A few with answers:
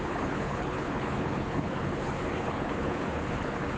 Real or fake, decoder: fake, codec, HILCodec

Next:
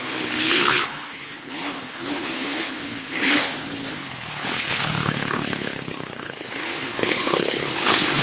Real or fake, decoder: fake, codec, HILCodec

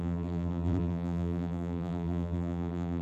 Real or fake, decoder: fake, vocoder, BigVGAN v2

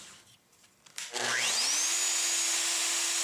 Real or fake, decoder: real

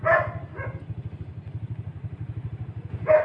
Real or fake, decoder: real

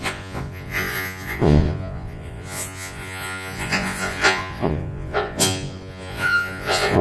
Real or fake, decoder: fake, vocoder, Vocos